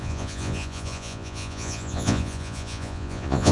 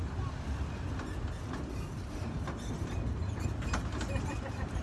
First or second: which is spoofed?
first